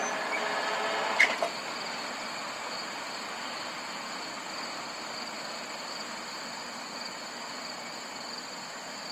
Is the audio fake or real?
real